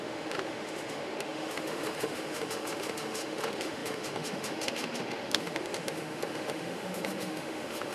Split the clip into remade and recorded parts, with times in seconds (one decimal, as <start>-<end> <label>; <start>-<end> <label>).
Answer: 0.0-7.9 remade